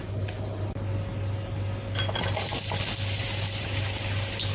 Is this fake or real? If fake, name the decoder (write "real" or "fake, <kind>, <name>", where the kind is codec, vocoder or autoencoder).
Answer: real